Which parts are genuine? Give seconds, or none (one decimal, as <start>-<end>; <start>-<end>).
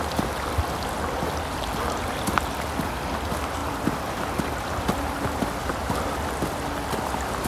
0.0-7.5